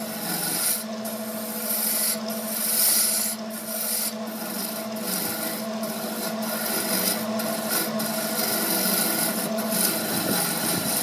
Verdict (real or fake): real